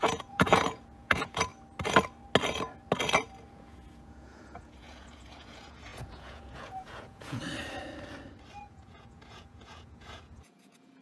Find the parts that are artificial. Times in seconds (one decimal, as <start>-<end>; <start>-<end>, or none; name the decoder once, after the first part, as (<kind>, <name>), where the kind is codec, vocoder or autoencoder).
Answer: 0.0-1.5 (vocoder, Vocos); 3.5-7.4; 8.6-11.0